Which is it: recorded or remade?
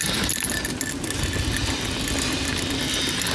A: recorded